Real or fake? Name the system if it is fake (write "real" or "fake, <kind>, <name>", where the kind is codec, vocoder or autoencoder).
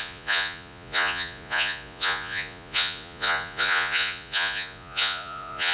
fake, vocoder, Vocos